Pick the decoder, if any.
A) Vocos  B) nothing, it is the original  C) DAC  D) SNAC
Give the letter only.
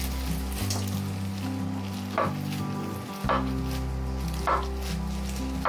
B